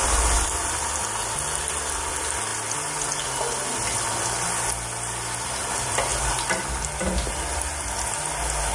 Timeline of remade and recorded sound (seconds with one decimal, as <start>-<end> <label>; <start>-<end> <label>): 0.0-8.7 recorded